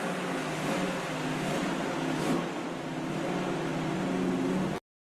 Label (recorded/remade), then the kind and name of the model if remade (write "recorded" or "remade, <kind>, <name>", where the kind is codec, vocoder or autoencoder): recorded